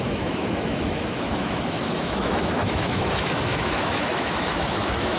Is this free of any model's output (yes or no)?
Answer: no